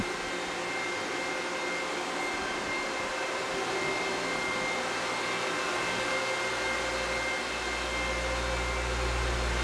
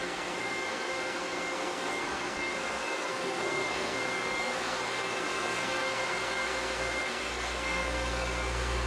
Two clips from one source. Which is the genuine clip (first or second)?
first